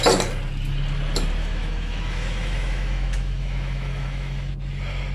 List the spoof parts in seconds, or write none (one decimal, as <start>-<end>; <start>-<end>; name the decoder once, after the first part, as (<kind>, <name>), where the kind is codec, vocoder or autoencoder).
1.4-4.5 (autoencoder, DAC-VAE)